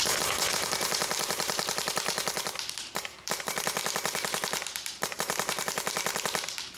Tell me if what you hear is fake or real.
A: fake